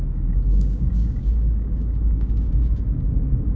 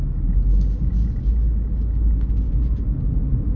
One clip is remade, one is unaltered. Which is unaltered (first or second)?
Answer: second